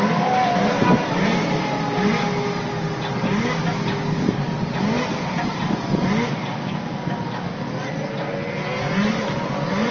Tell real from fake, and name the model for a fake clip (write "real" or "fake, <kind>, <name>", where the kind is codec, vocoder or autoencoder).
real